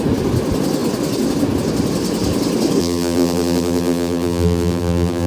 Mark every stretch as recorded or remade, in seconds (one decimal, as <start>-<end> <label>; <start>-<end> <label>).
0.0-2.8 recorded; 2.8-5.3 remade